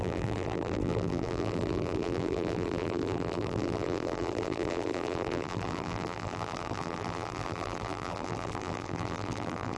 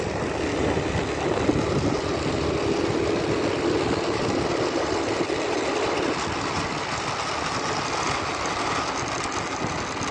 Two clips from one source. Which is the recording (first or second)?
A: second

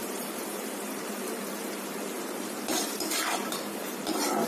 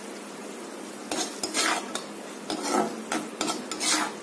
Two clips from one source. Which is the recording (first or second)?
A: second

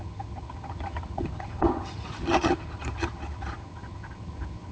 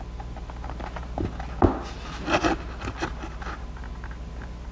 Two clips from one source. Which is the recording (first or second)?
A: second